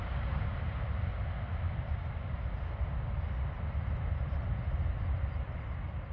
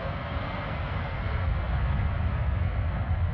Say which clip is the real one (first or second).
first